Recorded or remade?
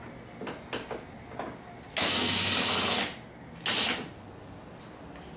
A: recorded